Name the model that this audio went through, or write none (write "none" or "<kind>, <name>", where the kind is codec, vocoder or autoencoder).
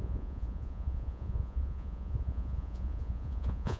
vocoder, Vocos